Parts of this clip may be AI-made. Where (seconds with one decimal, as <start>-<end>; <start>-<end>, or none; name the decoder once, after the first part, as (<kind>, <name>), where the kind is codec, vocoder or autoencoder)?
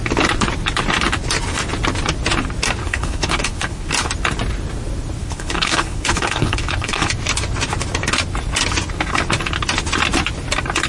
2.8-3.9 (codec, HILCodec); 5.2-7.1